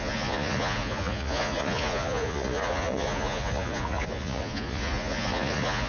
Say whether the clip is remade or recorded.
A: remade